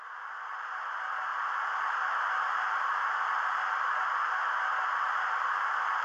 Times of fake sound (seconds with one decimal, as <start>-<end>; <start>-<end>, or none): none